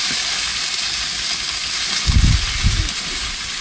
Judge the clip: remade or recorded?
recorded